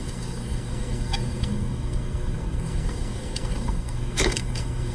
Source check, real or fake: fake